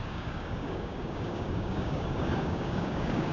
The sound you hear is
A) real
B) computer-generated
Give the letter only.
B